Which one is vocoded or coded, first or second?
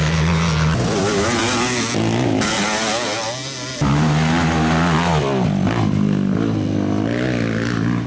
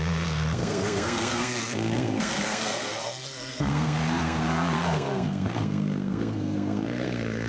second